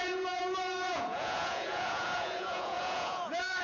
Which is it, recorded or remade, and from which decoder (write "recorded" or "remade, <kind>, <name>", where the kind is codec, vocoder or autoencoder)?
remade, vocoder, Vocos